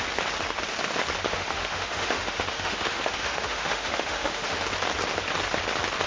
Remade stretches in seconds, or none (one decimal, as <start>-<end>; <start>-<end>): 1.3-4.6